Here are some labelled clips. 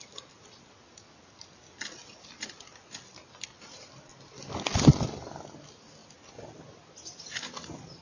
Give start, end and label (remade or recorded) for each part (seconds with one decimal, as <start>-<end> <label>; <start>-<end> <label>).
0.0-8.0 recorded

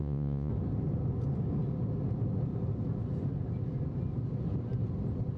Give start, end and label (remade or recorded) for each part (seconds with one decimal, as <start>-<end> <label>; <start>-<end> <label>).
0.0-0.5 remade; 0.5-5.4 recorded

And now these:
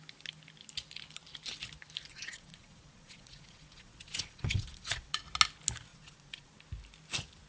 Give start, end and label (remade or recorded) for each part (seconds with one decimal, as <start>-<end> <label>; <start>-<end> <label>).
0.0-2.1 recorded; 2.1-5.2 remade; 5.2-5.9 recorded; 5.9-6.5 remade; 6.5-7.5 recorded

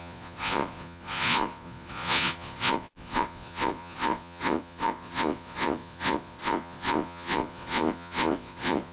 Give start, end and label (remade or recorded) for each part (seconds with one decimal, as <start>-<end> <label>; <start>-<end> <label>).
0.0-8.9 remade

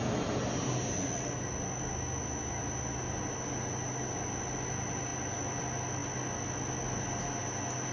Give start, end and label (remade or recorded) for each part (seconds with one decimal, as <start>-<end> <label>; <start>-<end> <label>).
0.0-7.9 recorded

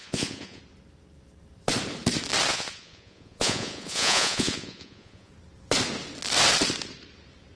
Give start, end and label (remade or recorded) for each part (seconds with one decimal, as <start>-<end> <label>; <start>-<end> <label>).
0.0-0.6 remade; 0.6-2.5 recorded; 2.5-5.3 remade; 5.3-7.6 recorded

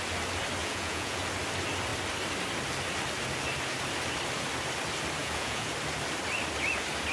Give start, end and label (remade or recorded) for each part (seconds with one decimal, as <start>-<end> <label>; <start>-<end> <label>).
0.0-0.6 recorded; 0.6-1.2 remade; 1.2-5.2 recorded; 5.2-5.7 remade; 5.7-7.1 recorded

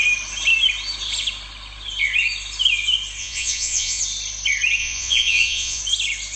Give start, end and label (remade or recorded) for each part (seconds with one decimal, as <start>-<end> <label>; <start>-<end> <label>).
0.0-3.2 recorded; 3.2-4.0 remade; 4.0-4.8 recorded; 4.8-5.8 remade; 5.8-6.4 recorded